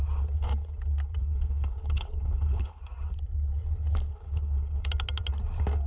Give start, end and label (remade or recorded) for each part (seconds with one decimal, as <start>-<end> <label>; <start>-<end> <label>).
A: 0.0-1.2 recorded; 1.2-2.8 remade; 2.8-4.1 recorded; 4.1-4.9 remade; 4.9-5.9 recorded